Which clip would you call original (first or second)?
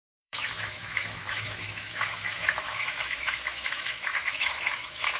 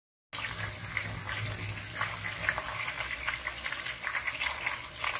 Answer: second